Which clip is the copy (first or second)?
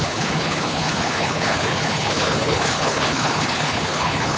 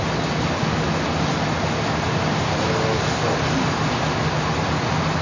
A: first